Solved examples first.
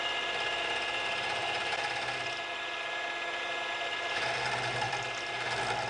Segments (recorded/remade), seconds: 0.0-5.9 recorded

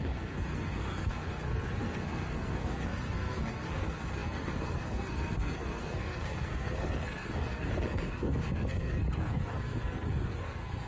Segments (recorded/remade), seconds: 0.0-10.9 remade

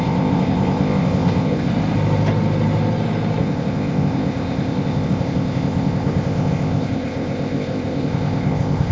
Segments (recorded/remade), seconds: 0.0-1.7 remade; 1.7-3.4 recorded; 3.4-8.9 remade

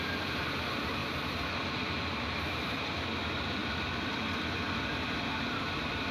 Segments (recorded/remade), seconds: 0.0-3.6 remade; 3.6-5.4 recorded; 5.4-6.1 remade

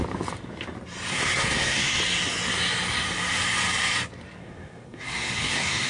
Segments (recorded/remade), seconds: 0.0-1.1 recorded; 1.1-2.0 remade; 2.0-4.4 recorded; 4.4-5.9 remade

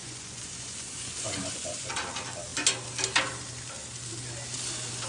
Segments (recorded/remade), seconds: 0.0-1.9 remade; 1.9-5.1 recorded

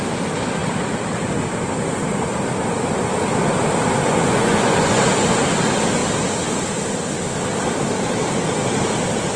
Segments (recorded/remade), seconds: 0.0-4.0 recorded; 4.0-5.0 remade; 5.0-9.4 recorded